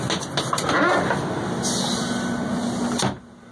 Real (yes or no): yes